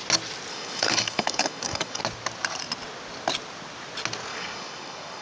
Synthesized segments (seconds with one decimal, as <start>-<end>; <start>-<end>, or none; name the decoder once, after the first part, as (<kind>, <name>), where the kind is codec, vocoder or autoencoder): 0.5-2.0 (codec, DAC); 4.3-5.2